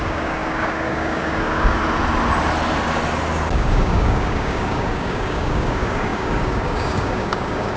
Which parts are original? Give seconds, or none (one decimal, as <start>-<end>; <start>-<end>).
1.8-3.5